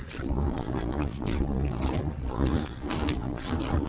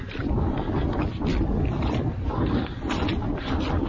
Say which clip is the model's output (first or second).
first